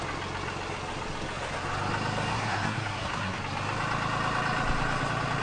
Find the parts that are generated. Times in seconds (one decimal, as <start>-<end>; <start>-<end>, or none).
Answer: 2.3-3.4

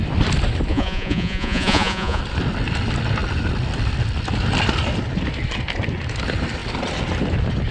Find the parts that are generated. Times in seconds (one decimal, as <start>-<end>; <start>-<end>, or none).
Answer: 0.7-2.2

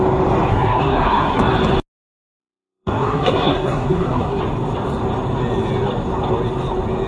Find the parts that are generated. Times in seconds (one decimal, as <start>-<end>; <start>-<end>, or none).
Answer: 0.5-1.4; 2.4-4.4

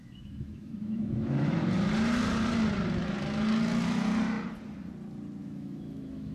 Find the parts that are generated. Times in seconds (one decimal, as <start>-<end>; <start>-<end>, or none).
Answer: 0.0-1.6; 5.4-6.3

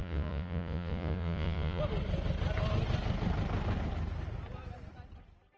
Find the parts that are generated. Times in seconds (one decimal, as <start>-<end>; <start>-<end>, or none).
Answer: 0.0-1.8

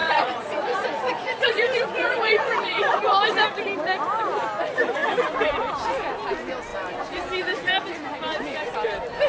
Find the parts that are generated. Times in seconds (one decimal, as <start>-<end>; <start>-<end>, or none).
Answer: 0.0-3.0

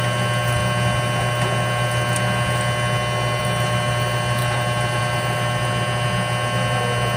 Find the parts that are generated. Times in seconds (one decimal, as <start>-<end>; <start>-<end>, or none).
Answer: none

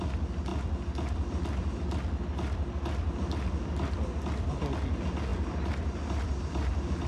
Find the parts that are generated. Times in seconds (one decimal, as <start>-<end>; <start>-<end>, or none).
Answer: none